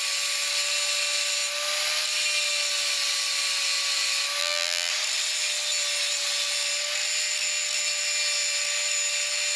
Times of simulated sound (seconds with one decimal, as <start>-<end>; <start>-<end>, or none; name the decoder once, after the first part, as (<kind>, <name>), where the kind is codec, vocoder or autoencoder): 4.4-4.9 (vocoder, BigVGAN v2)